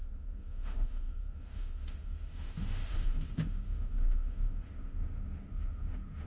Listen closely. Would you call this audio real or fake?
fake